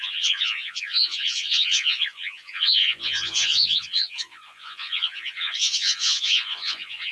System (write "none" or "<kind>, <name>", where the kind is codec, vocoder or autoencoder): vocoder, Vocos